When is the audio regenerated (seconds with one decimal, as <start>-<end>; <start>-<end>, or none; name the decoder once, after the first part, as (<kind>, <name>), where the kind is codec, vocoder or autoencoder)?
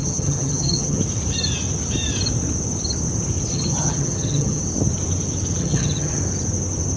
0.0-1.0 (vocoder, HiFi-GAN); 3.5-4.6; 5.6-6.2